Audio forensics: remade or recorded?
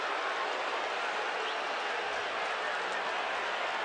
recorded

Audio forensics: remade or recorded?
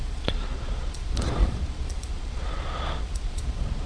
remade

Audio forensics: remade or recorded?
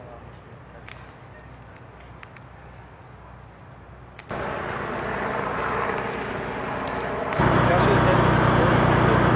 recorded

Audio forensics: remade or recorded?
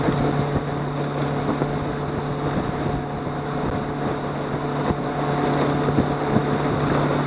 recorded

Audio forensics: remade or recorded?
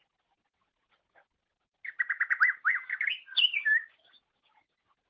recorded